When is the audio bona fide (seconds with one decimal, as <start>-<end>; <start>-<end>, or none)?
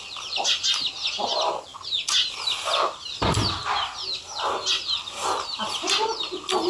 0.0-6.7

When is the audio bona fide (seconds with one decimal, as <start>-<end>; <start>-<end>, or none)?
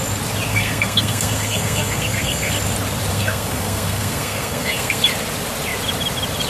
0.0-0.5; 2.5-3.1; 5.0-6.5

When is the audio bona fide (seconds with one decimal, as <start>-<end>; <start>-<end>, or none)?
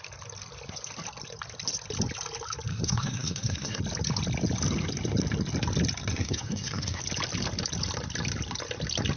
0.0-2.7; 3.8-6.1; 7.0-9.2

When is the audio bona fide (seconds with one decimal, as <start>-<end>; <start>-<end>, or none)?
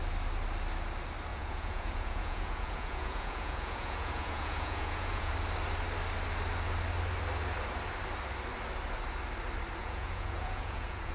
0.0-1.3; 5.3-9.8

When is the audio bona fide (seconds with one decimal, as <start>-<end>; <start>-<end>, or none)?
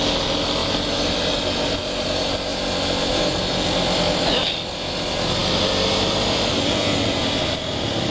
0.0-5.4; 7.6-8.1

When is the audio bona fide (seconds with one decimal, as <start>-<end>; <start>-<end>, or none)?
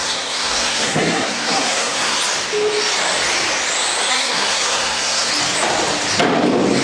2.2-4.1; 5.3-6.8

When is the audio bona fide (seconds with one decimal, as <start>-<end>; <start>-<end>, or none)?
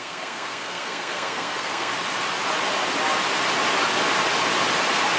1.9-5.2